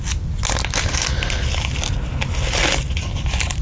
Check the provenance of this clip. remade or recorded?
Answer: recorded